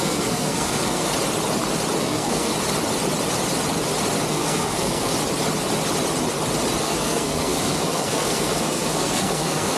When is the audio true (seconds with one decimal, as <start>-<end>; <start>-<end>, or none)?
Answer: 1.1-2.0; 2.5-4.3; 5.1-6.8